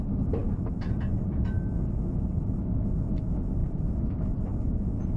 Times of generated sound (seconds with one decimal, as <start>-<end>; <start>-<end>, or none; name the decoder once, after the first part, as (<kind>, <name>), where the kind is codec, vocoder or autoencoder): none